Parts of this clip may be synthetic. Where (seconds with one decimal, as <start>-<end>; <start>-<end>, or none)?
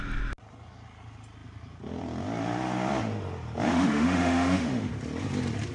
3.7-4.9